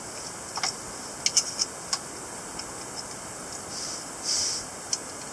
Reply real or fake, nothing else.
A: real